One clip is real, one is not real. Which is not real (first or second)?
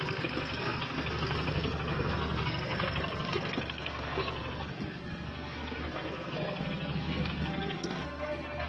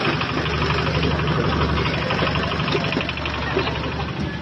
first